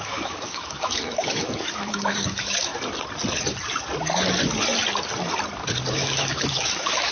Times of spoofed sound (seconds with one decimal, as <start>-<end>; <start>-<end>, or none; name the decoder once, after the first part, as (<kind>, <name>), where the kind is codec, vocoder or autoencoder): 0.0-2.7 (autoencoder, DAC-VAE); 5.9-7.1